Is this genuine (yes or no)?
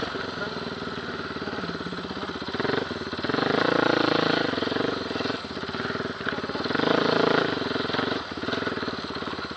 yes